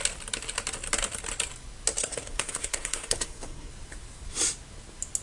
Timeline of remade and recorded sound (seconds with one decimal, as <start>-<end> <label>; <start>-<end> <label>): 0.0-2.0 recorded; 2.0-3.7 remade; 3.7-5.2 recorded